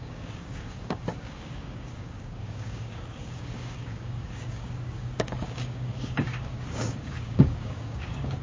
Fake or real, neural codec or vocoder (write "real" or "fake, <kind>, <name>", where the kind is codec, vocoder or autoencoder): fake, codec, DAC